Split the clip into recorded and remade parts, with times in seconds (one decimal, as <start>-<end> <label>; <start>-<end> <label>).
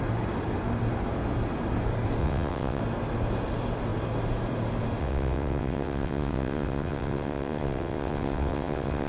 0.0-2.2 recorded; 2.2-2.8 remade; 2.8-5.0 recorded; 5.0-9.1 remade